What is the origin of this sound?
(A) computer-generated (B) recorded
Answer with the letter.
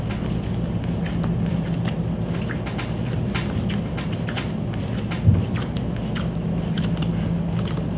B